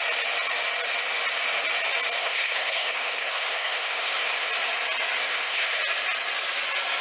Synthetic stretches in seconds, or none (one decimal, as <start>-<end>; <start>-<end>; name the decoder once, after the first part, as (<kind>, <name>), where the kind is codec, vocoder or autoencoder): 2.2-4.5 (codec, SNAC); 5.2-5.8